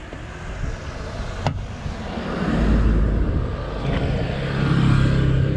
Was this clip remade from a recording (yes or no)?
no